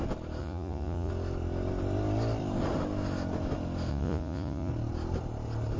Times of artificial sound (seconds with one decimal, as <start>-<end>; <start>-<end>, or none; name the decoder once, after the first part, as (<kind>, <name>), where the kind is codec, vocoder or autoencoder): 0.4-1.1 (vocoder, Vocos); 3.9-4.7